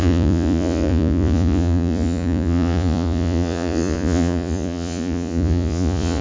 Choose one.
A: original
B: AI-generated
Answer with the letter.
B